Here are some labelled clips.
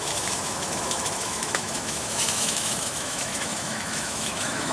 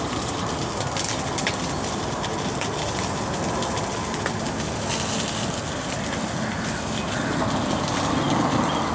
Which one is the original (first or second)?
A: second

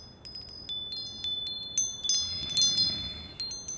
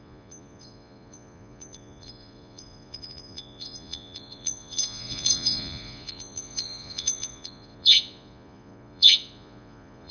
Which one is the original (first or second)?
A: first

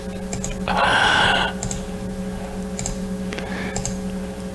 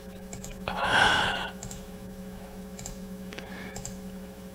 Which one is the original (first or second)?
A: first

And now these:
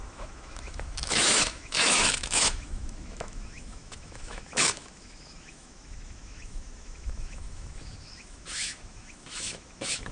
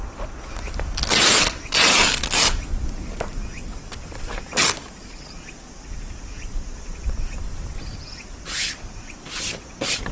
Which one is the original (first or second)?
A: second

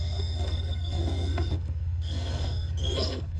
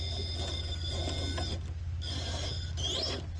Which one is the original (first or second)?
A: second